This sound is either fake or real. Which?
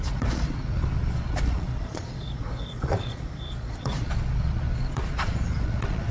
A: fake